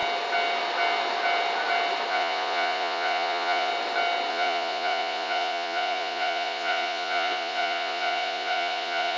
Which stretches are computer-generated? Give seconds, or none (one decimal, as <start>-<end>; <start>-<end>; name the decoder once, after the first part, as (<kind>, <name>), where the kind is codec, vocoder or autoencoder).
2.1-3.7 (vocoder, Vocos); 4.3-9.2